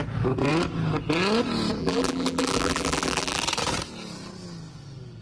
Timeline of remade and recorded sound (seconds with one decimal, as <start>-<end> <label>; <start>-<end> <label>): 0.0-1.8 recorded; 1.8-3.4 remade; 3.4-5.2 recorded